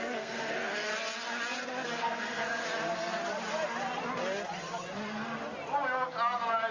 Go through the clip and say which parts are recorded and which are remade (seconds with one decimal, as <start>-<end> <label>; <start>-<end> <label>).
0.0-0.9 remade; 0.9-2.0 recorded; 2.0-2.6 remade; 2.6-6.7 recorded